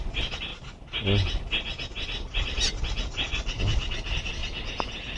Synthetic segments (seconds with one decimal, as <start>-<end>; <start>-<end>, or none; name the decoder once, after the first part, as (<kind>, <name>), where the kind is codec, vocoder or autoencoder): 0.0-0.5 (vocoder, BigVGAN v2); 3.6-4.4